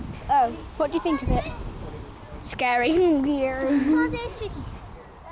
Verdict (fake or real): real